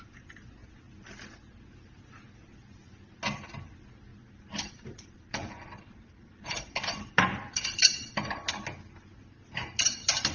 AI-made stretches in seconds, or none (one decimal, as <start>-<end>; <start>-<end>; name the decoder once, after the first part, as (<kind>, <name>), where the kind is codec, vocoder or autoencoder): 0.6-1.6 (vocoder, BigVGAN v2); 4.1-8.3